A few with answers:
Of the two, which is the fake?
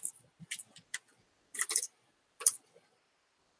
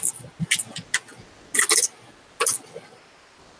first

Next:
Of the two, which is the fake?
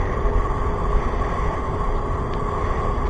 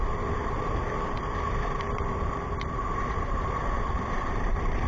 second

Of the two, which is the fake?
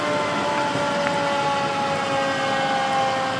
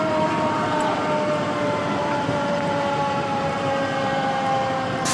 second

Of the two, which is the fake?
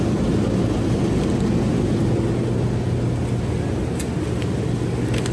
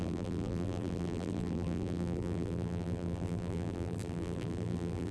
second